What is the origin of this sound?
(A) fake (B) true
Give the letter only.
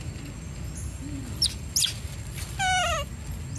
B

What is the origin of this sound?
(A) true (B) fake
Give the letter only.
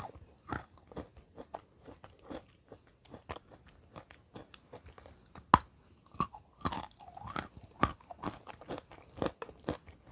A